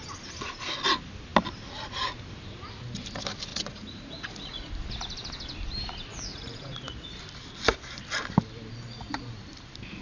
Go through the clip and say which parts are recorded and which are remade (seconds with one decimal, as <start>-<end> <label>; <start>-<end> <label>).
0.0-3.5 recorded; 3.5-4.7 remade; 4.7-6.1 recorded; 6.1-7.2 remade; 7.2-10.0 recorded